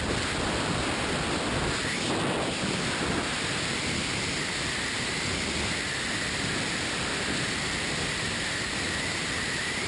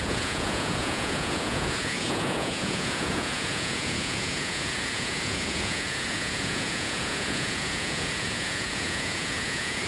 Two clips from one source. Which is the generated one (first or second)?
second